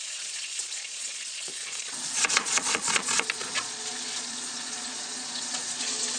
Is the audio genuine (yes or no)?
no